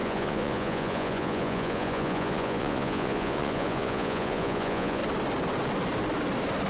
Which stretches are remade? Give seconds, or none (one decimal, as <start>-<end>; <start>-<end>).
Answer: 0.0-5.0